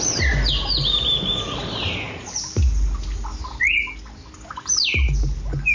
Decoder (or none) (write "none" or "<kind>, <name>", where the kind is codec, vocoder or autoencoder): none